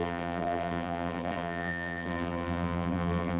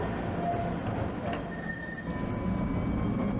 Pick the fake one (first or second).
first